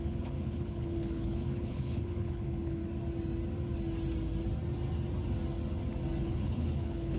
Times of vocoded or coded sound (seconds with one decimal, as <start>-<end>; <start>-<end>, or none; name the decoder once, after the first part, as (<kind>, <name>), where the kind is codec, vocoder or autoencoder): 0.0-2.8 (codec, HILCodec); 6.2-7.2